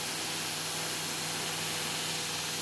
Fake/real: real